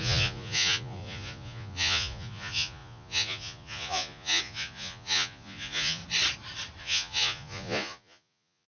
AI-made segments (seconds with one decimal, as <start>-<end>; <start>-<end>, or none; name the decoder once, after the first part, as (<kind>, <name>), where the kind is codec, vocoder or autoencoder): 0.0-6.0 (vocoder, Vocos); 6.8-8.7